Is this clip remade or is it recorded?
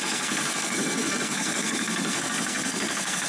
remade